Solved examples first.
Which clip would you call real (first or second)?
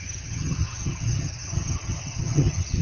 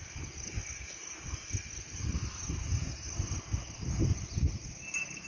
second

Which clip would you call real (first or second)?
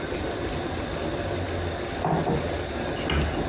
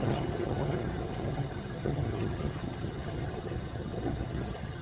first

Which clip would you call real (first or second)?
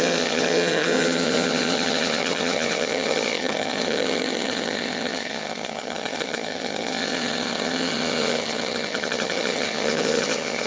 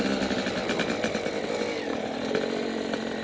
second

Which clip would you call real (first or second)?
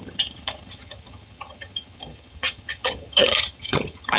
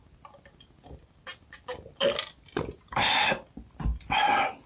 second